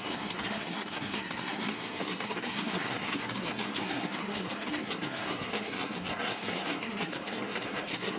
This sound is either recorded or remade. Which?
remade